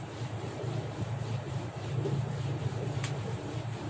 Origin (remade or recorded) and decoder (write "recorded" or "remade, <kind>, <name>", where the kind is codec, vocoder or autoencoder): remade, vocoder, BigVGAN v2